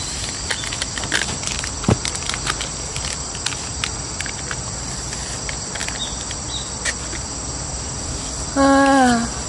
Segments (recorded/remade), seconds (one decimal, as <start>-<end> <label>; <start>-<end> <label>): 0.0-9.5 recorded